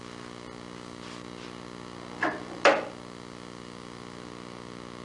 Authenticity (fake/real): real